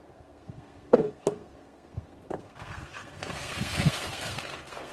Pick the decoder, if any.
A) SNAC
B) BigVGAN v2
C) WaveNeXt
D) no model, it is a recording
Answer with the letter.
A